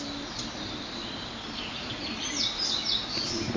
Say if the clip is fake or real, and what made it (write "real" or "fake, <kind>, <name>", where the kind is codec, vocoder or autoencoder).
real